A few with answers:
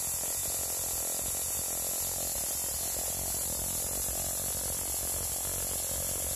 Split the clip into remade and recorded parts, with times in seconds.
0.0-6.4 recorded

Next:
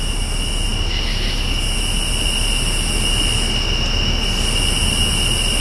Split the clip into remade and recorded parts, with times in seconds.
0.0-5.6 recorded

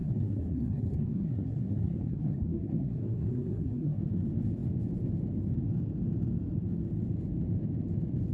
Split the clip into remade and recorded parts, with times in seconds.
0.0-4.0 remade; 4.0-8.3 recorded

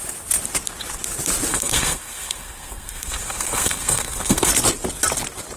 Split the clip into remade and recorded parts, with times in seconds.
0.0-1.5 recorded; 1.5-4.5 remade; 4.5-5.6 recorded

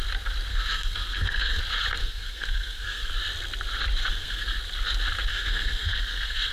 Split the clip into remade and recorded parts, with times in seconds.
0.0-0.5 recorded; 0.5-1.6 remade; 1.6-2.0 recorded; 2.0-3.1 remade; 3.1-4.1 recorded; 4.1-4.6 remade; 4.6-5.3 recorded; 5.3-6.5 remade

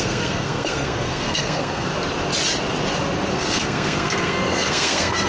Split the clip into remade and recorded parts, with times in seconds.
0.0-1.9 remade; 1.9-3.3 recorded; 3.3-5.3 remade

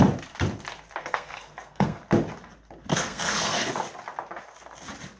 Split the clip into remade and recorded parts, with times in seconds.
0.0-1.0 recorded; 1.0-2.0 remade; 2.0-2.9 recorded; 2.9-3.7 remade; 3.7-5.2 recorded

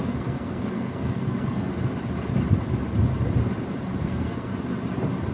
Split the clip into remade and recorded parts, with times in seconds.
0.0-1.7 remade; 1.7-4.0 recorded; 4.0-4.5 remade; 4.5-5.3 recorded